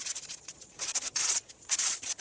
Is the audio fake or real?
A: fake